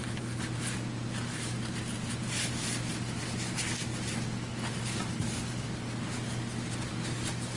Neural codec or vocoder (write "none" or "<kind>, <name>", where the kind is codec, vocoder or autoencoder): none